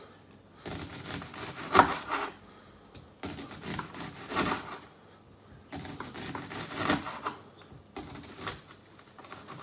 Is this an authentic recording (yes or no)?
yes